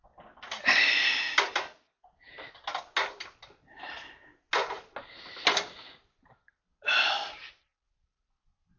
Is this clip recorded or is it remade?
recorded